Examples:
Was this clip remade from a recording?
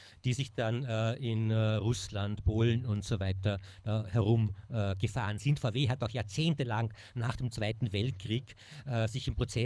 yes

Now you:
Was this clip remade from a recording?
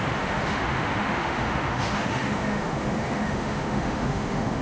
yes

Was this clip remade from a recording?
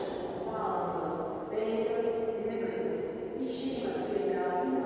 no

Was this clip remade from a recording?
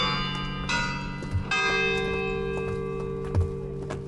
no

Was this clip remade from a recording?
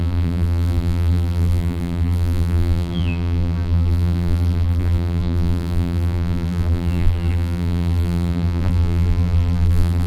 yes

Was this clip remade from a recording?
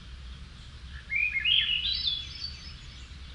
no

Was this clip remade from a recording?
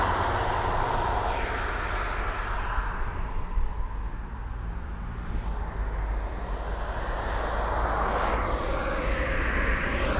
no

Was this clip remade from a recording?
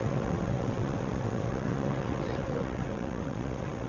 yes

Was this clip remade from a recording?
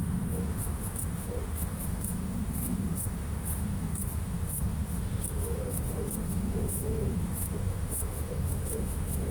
yes